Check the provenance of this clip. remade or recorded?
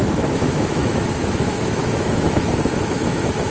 remade